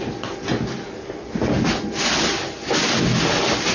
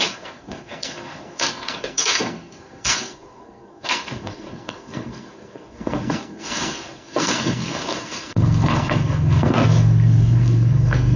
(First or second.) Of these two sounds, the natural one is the first